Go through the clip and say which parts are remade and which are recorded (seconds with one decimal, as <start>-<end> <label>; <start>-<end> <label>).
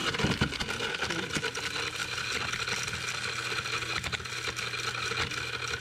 0.0-5.8 recorded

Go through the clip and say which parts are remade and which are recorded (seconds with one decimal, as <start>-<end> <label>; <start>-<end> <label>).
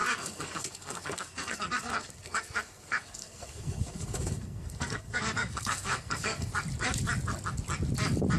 0.0-6.5 remade; 6.5-8.4 recorded